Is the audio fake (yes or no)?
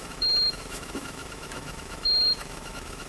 yes